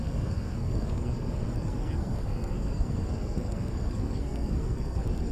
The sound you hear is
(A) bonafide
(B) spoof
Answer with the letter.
B